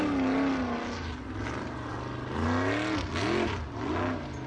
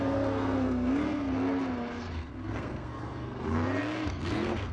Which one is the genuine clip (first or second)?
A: first